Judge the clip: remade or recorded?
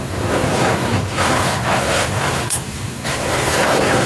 remade